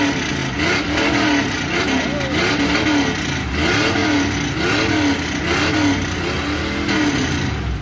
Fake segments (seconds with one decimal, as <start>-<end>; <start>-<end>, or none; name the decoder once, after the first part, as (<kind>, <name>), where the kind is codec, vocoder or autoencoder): none